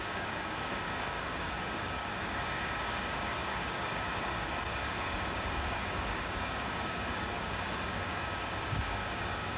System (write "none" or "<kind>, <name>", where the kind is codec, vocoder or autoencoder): codec, DAC